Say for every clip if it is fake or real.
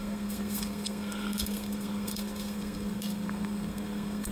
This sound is fake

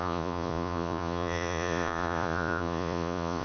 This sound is fake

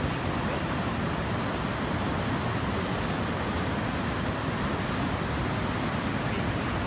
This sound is real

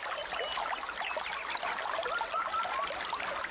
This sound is real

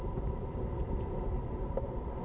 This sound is fake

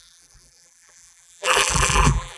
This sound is fake